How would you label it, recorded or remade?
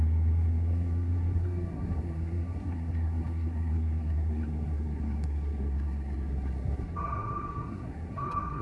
remade